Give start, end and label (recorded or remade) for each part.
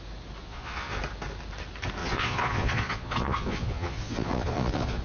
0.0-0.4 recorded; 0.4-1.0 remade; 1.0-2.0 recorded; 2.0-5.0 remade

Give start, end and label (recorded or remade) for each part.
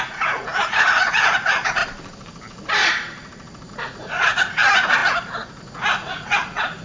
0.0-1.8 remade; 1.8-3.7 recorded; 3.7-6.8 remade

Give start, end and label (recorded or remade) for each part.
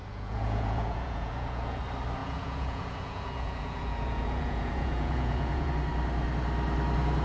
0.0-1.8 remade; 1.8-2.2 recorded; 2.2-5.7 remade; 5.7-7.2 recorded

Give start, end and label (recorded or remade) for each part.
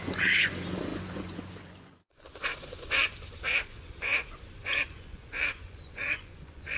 0.0-6.8 remade